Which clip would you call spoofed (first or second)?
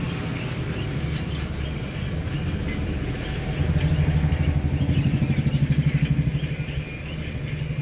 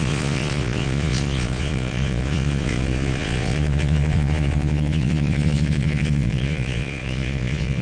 second